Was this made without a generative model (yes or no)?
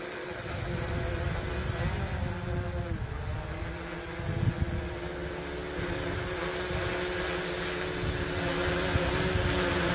yes